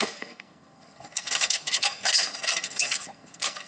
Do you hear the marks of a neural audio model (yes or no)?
yes